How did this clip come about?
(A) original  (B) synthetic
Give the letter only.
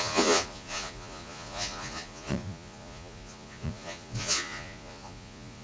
B